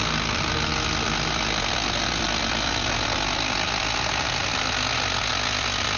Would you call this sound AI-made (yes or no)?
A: no